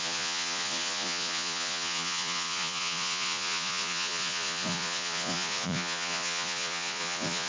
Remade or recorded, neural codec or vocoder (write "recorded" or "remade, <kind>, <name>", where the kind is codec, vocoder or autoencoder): remade, vocoder, Vocos